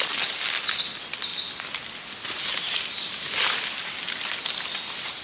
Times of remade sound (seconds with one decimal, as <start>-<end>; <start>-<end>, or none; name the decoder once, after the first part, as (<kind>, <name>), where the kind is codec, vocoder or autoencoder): none